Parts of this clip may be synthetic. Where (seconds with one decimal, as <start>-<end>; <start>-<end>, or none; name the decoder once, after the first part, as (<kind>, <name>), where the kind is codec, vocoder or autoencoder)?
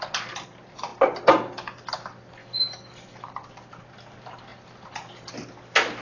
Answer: 2.4-3.3 (autoencoder, DAC-VAE)